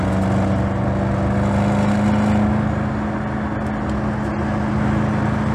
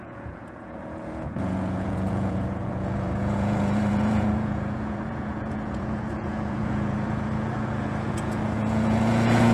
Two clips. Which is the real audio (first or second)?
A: first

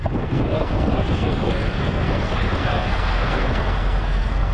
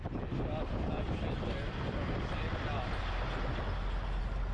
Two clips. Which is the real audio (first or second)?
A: second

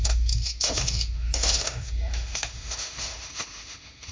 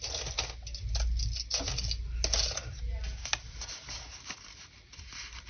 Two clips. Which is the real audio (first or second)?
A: second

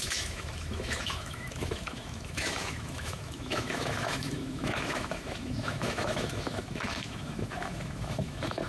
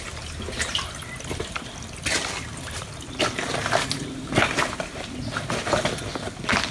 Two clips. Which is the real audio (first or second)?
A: second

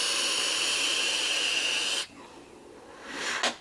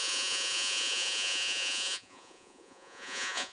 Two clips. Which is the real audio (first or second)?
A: first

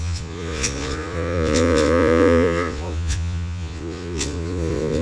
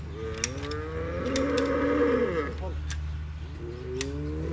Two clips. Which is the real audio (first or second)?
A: second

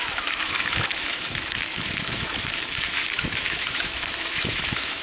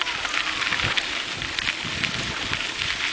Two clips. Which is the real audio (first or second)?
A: second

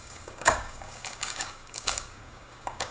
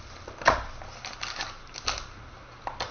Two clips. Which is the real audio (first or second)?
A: second